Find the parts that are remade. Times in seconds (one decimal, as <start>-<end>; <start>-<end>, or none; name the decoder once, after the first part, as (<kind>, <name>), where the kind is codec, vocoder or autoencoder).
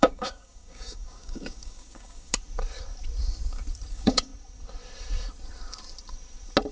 0.0-2.3 (codec, DAC); 3.9-4.3